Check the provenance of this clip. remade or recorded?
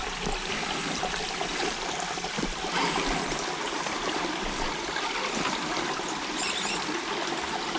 recorded